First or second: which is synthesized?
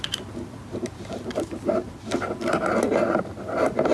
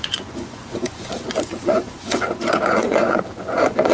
second